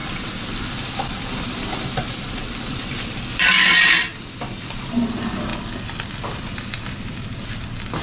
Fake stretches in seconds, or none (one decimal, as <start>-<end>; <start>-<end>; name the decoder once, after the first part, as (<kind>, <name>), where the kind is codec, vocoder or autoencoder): 0.0-3.6 (vocoder, BigVGAN v2)